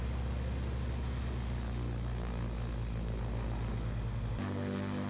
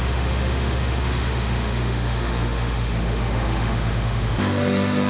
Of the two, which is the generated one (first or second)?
second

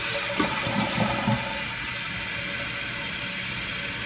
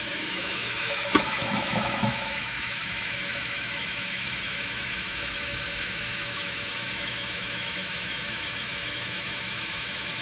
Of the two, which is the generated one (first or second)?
second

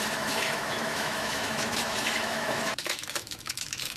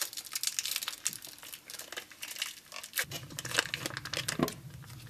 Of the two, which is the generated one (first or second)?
first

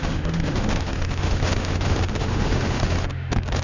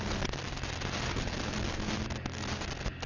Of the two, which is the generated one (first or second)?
first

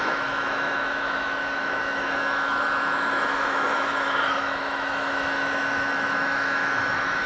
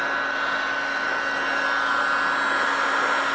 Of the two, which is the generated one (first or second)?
first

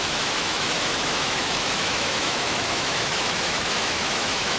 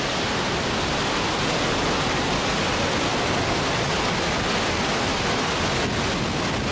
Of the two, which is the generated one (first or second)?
first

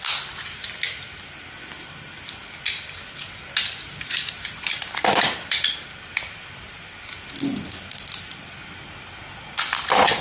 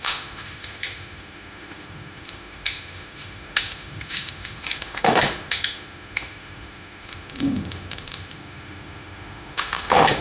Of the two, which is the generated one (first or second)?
second